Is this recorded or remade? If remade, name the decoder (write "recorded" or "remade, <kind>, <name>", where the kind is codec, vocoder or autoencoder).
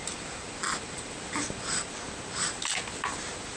recorded